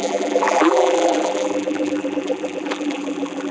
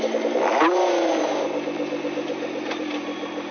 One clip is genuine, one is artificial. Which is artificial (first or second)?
first